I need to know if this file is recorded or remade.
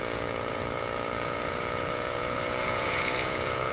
remade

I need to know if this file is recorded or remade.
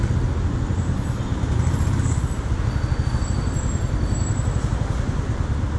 recorded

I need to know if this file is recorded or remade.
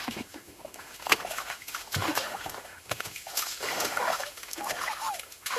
remade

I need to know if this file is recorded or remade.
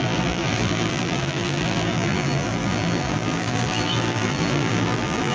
remade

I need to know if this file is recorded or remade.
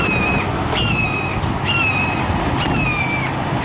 recorded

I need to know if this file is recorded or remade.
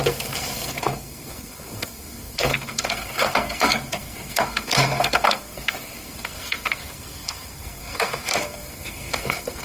remade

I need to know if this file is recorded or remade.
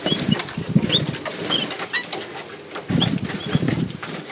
recorded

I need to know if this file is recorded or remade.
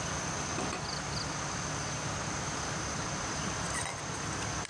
recorded